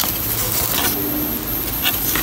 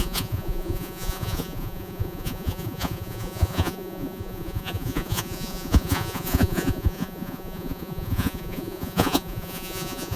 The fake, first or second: second